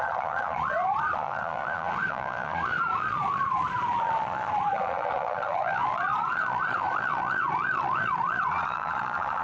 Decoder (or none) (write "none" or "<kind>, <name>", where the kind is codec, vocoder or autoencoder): vocoder, Vocos